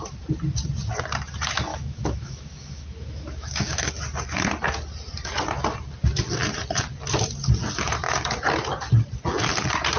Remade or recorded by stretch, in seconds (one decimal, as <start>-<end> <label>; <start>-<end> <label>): 0.0-1.7 recorded; 1.7-3.9 remade; 3.9-10.0 recorded